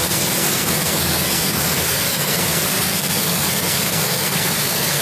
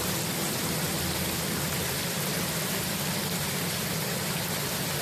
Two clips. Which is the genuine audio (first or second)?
second